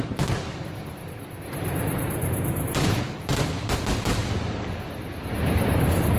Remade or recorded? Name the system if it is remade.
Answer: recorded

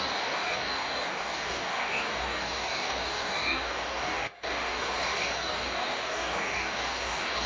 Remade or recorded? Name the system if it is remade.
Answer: remade, codec, DAC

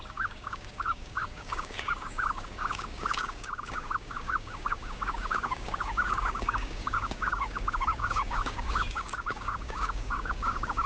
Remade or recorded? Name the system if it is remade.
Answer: remade, codec, DAC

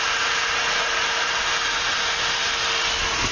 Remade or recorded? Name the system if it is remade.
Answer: recorded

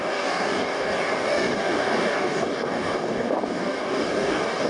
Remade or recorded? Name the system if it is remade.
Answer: remade, codec, DAC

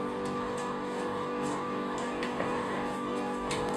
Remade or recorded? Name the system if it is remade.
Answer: remade, codec, DAC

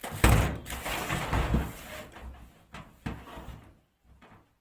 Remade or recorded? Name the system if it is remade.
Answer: recorded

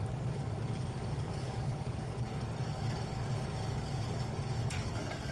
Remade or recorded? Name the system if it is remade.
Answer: remade, codec, DAC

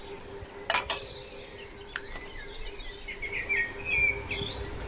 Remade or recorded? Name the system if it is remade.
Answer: recorded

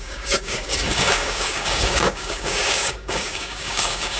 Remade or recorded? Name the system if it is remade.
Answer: remade, codec, DAC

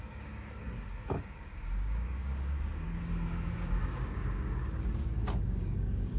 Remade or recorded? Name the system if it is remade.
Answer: remade, codec, DAC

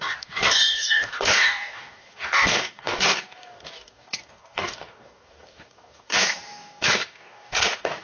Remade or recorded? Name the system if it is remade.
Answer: remade, codec, DAC